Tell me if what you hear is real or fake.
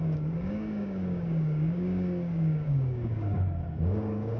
fake